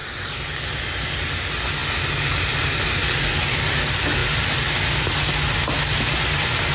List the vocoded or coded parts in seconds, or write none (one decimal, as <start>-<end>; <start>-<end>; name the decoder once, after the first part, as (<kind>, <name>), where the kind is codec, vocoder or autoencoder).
none